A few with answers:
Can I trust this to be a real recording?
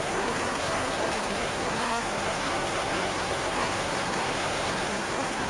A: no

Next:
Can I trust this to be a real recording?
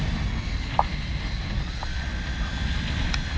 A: yes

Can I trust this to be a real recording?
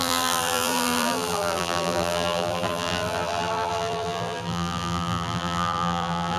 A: no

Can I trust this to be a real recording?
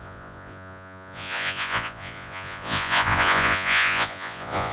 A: no